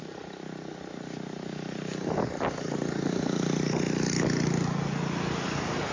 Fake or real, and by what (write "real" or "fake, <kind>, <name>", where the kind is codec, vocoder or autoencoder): real